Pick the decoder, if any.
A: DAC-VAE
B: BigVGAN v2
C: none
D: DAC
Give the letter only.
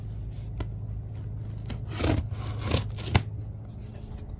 C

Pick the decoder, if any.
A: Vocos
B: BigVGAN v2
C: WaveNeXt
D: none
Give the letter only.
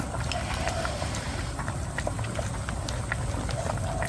D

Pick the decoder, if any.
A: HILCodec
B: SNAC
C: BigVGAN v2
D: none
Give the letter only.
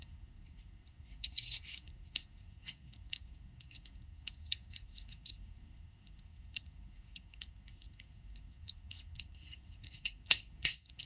B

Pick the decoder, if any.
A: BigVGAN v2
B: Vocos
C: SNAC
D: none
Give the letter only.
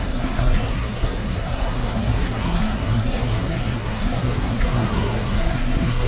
C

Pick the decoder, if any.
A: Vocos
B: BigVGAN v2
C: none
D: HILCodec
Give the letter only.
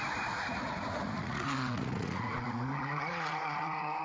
A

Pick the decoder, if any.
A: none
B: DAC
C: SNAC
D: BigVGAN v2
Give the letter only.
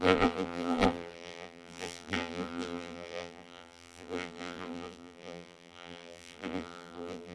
D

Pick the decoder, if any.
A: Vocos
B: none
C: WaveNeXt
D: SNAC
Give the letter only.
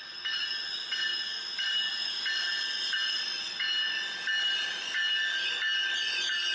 B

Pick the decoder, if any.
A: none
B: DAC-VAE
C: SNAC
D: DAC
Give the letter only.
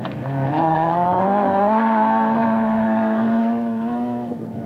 C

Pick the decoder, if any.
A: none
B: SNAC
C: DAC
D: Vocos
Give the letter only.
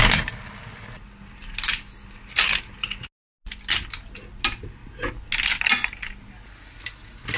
A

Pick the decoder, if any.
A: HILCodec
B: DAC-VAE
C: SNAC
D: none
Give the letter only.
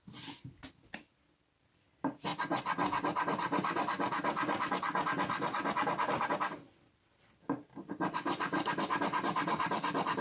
D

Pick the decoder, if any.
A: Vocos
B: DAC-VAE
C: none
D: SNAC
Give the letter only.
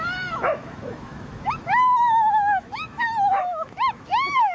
B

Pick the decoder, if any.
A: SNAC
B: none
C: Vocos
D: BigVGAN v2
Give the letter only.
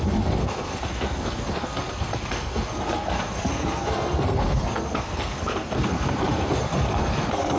A